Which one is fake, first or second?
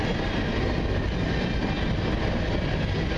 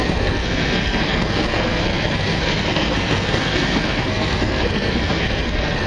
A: second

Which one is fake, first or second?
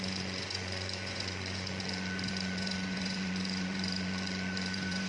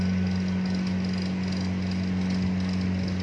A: first